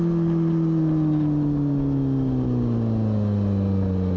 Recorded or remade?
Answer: recorded